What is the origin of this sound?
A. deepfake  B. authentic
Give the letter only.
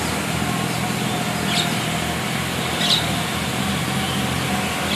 B